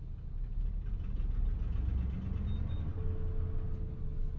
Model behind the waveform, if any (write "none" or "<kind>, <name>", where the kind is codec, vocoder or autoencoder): none